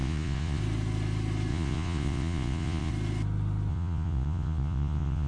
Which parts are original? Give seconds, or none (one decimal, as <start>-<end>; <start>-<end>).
0.6-1.5; 2.9-3.7